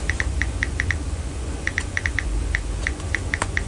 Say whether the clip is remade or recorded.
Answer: remade